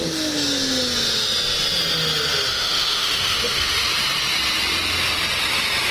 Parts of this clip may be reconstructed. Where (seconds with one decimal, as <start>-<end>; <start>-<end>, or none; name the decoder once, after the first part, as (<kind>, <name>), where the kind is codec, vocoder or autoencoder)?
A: 2.5-3.7 (autoencoder, DAC-VAE)